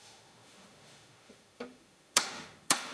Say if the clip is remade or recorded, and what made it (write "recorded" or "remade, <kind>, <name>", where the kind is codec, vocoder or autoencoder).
remade, autoencoder, DAC-VAE